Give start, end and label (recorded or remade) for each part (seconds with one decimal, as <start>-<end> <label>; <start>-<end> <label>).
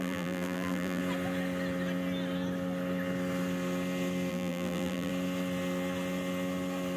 0.0-1.0 remade; 1.0-4.3 recorded; 4.3-5.1 remade; 5.1-7.0 recorded